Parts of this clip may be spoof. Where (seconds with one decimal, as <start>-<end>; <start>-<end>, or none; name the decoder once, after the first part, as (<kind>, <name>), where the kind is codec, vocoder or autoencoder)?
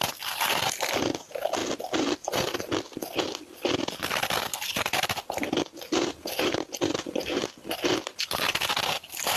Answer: none